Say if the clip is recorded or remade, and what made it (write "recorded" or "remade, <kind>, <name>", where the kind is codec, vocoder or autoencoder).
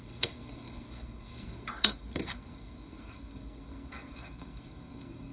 remade, codec, SNAC